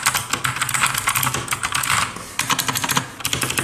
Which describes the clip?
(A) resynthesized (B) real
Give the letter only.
B